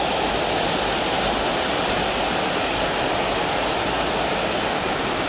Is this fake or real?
real